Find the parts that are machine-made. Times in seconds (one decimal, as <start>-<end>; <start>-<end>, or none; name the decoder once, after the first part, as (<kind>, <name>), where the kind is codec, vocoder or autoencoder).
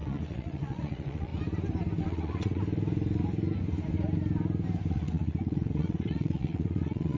0.0-1.3 (vocoder, WaveNeXt); 2.0-2.6; 4.9-7.2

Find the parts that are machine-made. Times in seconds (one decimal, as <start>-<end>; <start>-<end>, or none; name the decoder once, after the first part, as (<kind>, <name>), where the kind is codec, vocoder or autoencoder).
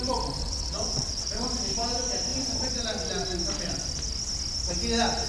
0.4-1.3 (vocoder, WaveNeXt)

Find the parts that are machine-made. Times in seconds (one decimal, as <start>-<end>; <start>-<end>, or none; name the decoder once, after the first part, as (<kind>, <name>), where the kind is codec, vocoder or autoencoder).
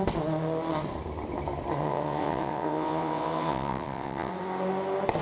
1.8-4.3 (vocoder, WaveNeXt)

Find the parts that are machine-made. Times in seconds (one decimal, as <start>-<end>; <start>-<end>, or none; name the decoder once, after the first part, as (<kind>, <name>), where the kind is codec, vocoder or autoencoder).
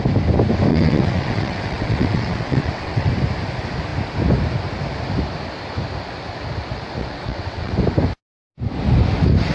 0.7-3.1 (vocoder, WaveNeXt); 7.0-7.7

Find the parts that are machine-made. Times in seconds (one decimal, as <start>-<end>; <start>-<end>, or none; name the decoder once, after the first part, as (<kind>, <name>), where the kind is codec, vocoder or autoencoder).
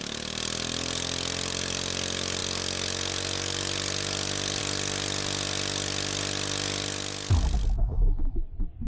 none